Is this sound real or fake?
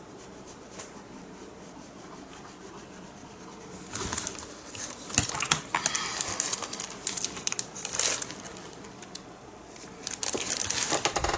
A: real